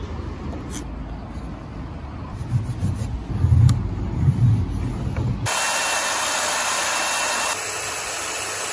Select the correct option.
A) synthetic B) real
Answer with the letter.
B